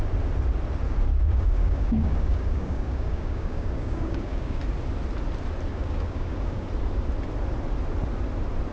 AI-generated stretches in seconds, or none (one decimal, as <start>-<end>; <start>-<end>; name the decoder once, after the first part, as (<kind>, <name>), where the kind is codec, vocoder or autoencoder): 1.1-4.6 (codec, DAC); 5.7-6.7